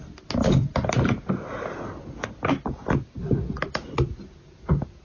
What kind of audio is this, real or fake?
real